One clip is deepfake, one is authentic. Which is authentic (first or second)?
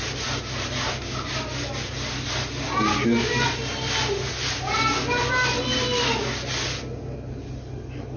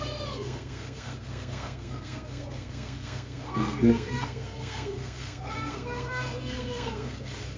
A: first